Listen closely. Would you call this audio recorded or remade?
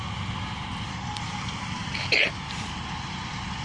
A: recorded